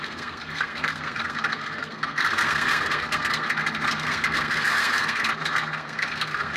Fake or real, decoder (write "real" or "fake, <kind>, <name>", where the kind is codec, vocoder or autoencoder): fake, codec, SNAC